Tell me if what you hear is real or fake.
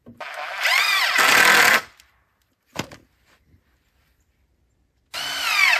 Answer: real